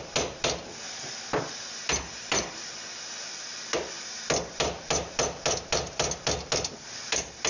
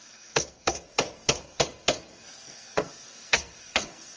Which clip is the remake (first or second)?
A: second